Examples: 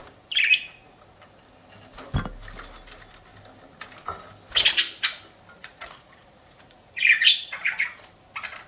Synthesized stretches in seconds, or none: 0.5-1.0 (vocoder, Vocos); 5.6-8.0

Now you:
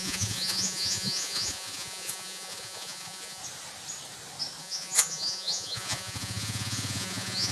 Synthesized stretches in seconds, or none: 0.0-3.4 (vocoder, Vocos); 4.6-7.5

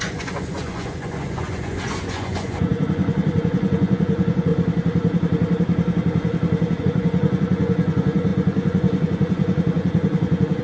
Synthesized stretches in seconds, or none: 0.0-4.5 (vocoder, Vocos); 6.8-10.6

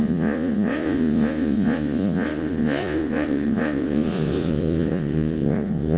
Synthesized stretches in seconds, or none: 0.0-6.0 (vocoder, Vocos)

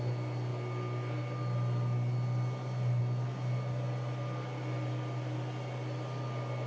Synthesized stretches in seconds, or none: none

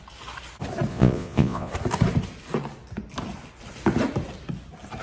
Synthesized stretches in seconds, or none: 0.9-1.7 (vocoder, Vocos)

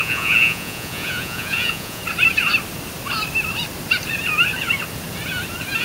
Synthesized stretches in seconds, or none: 0.0-2.0 (vocoder, Vocos)